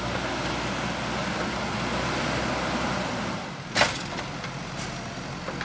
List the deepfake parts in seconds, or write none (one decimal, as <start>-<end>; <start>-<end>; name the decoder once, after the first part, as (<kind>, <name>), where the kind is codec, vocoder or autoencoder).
none